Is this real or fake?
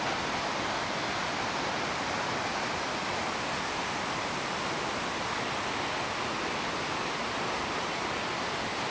real